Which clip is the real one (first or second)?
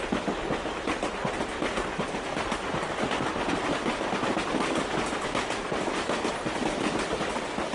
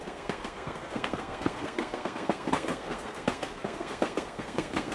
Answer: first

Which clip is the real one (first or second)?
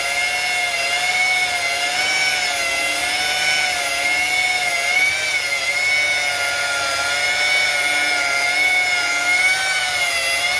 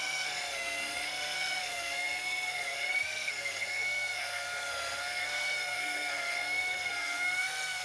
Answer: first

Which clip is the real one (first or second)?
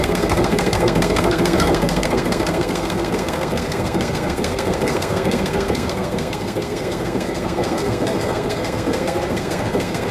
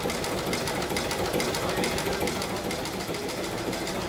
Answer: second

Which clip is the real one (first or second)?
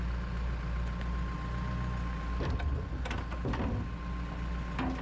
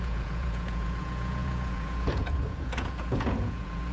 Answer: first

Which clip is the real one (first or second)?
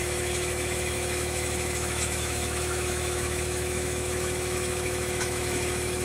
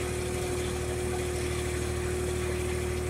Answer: second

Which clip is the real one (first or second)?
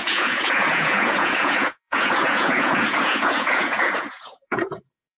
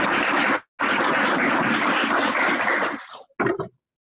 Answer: second